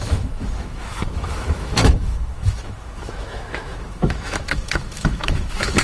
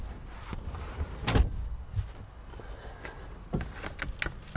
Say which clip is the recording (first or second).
second